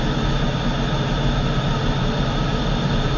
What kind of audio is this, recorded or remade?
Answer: recorded